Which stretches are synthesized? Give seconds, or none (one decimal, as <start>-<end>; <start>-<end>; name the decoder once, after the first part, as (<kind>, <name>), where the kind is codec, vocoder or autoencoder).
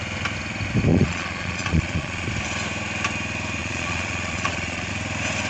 0.9-2.3 (vocoder, Vocos); 3.6-4.9